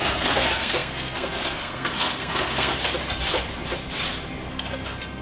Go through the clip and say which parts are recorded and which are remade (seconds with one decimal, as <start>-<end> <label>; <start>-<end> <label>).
0.0-2.7 remade; 2.7-4.5 recorded; 4.5-5.2 remade